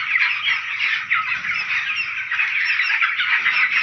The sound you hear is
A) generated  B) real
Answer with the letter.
B